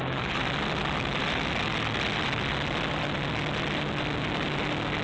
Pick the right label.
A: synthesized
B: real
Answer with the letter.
B